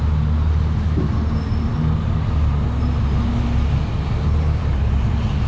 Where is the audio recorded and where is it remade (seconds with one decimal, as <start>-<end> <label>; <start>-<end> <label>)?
0.0-4.7 recorded; 4.7-5.5 remade